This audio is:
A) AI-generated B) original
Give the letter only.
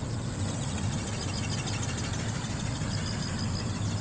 B